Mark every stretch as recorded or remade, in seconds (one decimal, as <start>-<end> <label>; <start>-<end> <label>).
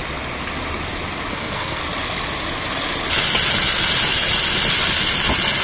0.0-1.3 recorded; 1.3-1.8 remade; 1.8-5.6 recorded